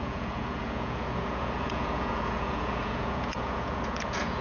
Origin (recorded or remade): remade